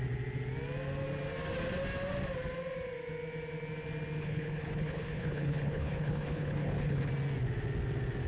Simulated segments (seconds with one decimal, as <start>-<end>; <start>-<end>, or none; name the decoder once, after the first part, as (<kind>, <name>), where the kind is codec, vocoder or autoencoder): 4.2-7.1 (codec, HILCodec)